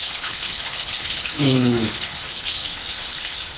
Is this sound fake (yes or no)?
yes